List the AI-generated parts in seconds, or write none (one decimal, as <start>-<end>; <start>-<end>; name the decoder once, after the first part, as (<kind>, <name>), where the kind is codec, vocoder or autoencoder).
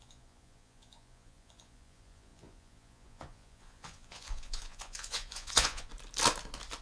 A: 0.0-5.9 (vocoder, Vocos)